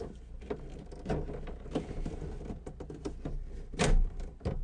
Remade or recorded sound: recorded